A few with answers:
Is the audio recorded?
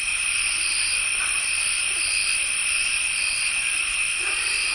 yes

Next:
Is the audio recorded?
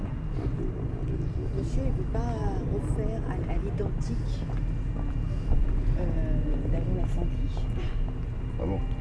yes